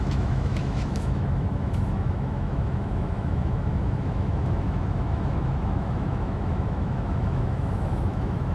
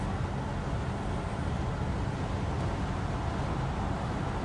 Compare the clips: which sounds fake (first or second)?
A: first